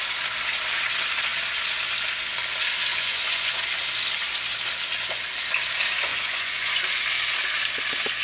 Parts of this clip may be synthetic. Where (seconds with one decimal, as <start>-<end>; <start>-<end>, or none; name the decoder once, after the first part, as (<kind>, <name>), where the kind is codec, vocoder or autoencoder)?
2.9-3.6 (vocoder, Vocos); 6.1-6.8

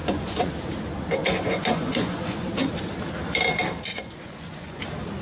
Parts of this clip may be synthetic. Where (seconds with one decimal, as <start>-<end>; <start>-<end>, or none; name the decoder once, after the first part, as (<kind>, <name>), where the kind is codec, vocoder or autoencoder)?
0.0-0.5 (vocoder, Vocos); 1.2-2.5; 3.9-4.8

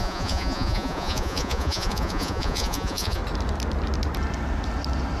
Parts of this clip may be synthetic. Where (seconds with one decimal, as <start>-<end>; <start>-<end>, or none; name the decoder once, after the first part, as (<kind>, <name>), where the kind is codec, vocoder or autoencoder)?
0.0-3.2 (vocoder, Vocos)